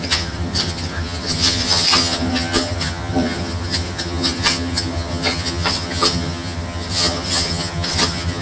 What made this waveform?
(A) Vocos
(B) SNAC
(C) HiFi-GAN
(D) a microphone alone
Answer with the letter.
C